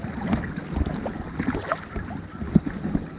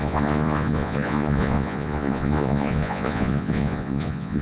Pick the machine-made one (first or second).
second